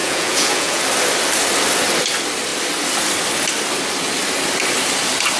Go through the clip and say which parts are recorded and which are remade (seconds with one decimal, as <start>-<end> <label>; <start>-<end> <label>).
0.0-0.8 remade; 0.8-5.4 recorded